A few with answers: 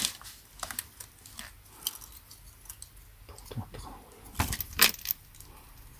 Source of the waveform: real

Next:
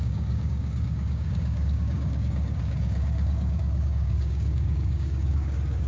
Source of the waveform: fake